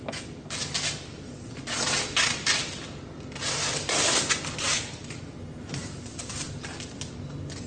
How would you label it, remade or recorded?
recorded